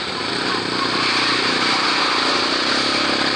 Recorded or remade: recorded